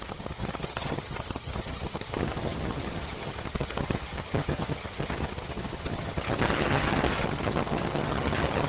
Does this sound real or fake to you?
fake